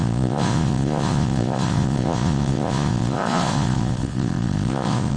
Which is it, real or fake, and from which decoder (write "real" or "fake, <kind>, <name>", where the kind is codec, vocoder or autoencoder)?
fake, vocoder, Vocos